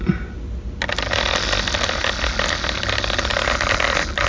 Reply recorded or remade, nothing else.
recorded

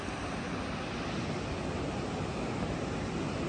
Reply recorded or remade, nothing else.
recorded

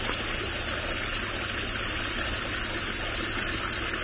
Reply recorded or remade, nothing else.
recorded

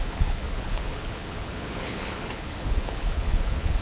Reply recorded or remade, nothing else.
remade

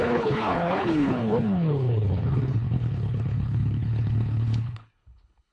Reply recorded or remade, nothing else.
remade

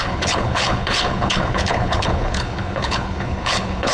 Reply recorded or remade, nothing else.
remade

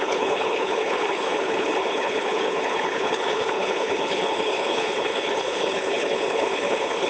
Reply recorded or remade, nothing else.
remade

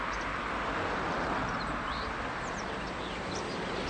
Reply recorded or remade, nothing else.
recorded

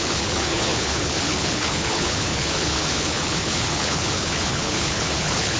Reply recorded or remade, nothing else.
remade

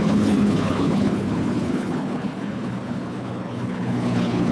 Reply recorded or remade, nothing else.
remade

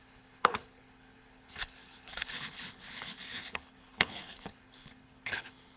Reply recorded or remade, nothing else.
remade